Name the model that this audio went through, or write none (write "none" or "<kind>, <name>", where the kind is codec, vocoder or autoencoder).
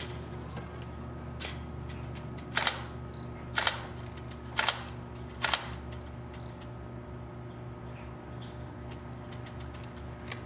none